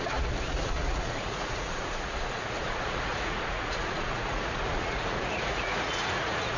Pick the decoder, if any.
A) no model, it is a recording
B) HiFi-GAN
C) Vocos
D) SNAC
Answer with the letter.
C